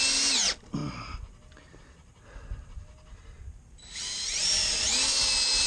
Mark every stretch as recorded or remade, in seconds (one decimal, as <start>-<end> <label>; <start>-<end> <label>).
0.0-5.7 recorded

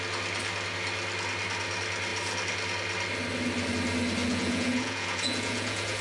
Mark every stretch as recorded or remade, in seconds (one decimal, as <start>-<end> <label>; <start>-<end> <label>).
0.0-4.2 recorded; 4.2-6.0 remade

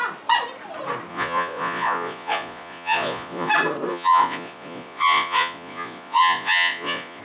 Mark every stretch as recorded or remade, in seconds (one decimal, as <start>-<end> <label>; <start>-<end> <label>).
0.0-1.1 recorded; 1.1-3.5 remade; 3.5-3.9 recorded; 3.9-7.2 remade

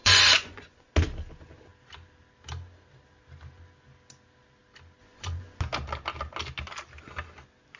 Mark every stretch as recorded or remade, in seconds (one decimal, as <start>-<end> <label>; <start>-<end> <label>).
0.0-0.9 remade; 0.9-5.0 recorded; 5.0-5.6 remade; 5.6-7.8 recorded

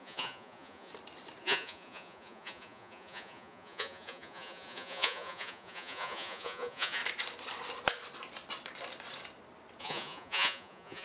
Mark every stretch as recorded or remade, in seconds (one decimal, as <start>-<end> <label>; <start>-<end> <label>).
0.0-0.9 remade; 0.9-1.4 recorded; 1.4-7.0 remade; 7.0-9.8 recorded; 9.8-11.0 remade

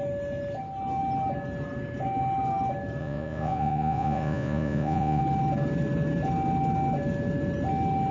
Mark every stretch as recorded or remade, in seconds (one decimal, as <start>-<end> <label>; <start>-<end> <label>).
0.0-3.0 recorded; 3.0-5.2 remade; 5.2-8.1 recorded